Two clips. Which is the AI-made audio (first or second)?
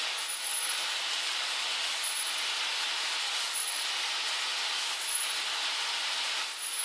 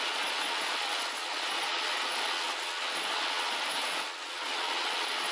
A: second